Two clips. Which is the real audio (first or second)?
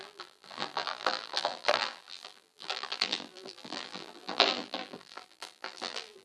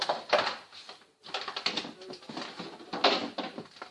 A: second